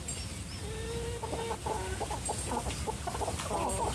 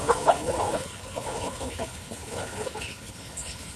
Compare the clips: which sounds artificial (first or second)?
second